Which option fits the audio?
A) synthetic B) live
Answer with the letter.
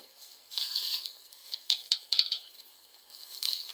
A